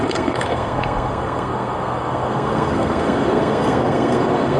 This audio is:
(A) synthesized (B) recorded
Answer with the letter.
A